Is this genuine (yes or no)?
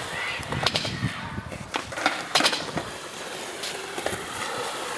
no